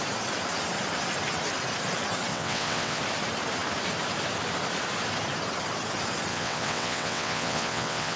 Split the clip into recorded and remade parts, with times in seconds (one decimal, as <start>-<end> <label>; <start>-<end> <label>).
0.0-2.3 recorded; 2.3-3.0 remade; 3.0-6.3 recorded; 6.3-8.2 remade